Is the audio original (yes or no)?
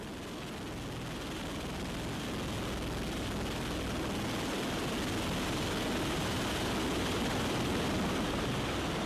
yes